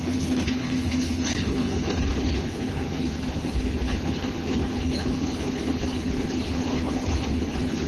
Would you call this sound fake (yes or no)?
yes